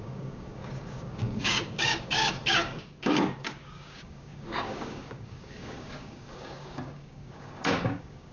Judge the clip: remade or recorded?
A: remade